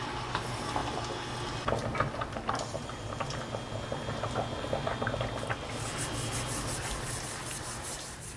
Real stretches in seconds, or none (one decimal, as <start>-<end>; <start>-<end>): 0.0-8.4